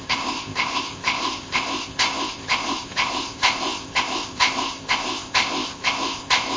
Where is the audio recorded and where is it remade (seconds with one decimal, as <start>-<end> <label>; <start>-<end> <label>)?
0.0-6.6 remade